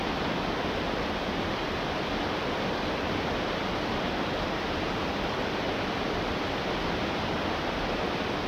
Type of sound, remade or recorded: remade